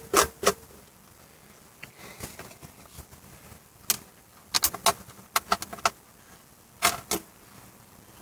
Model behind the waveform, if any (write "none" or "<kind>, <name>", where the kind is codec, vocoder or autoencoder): none